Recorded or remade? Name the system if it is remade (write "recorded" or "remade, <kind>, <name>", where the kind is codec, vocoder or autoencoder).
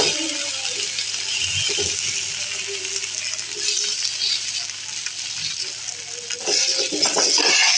recorded